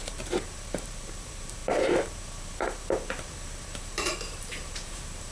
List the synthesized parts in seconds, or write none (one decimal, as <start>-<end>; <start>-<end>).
0.0-5.3